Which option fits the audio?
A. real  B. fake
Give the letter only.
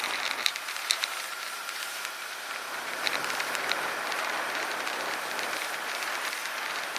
B